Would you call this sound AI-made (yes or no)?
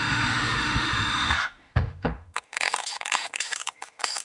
yes